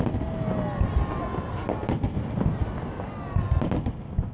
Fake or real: real